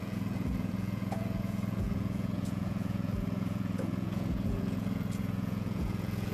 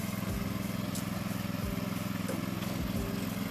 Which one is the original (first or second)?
second